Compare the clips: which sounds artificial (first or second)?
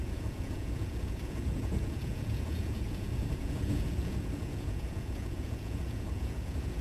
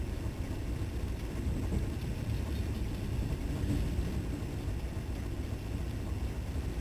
first